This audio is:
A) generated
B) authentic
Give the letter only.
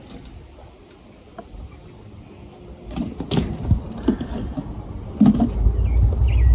B